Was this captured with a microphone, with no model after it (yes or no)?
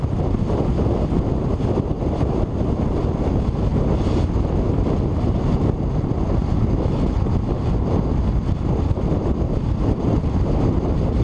yes